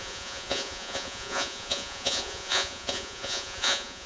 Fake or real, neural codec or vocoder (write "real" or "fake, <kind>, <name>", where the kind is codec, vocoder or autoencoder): fake, vocoder, Vocos